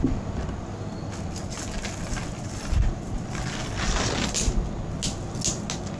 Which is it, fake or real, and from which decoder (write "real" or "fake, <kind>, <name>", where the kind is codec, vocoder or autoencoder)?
real